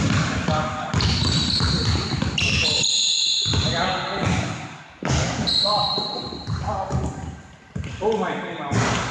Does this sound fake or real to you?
real